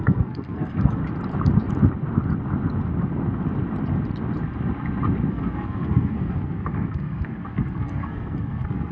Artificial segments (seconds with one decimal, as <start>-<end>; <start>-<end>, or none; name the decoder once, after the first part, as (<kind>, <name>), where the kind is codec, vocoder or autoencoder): 0.0-1.0 (codec, SNAC); 5.3-8.9